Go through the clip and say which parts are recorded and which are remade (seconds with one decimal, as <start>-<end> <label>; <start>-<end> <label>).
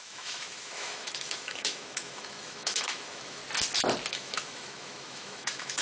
0.0-3.4 remade; 3.4-4.1 recorded; 4.1-5.8 remade